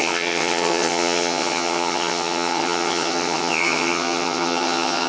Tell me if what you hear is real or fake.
fake